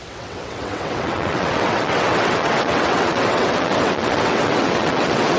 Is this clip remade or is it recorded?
remade